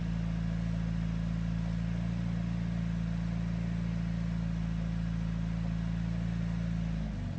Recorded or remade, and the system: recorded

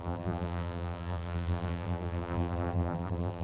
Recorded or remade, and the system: remade, vocoder, BigVGAN v2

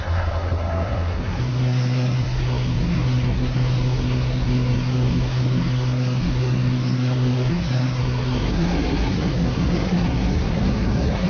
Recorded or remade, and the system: remade, codec, SNAC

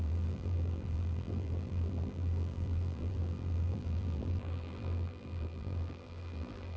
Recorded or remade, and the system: remade, vocoder, BigVGAN v2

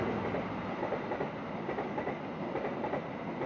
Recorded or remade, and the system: recorded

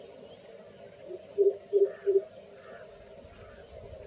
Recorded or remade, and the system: recorded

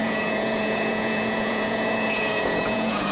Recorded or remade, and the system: remade, vocoder, Vocos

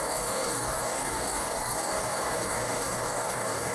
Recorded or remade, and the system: remade, codec, DAC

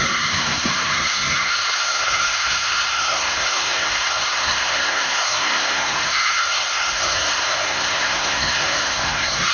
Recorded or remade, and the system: remade, codec, SNAC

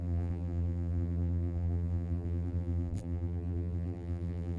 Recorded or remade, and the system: remade, vocoder, BigVGAN v2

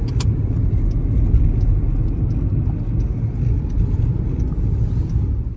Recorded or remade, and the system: recorded